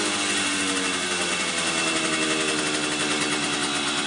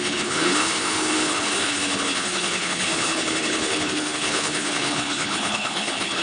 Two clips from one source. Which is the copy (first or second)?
second